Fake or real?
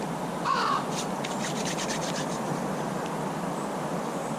real